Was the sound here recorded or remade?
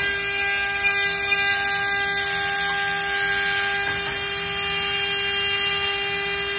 recorded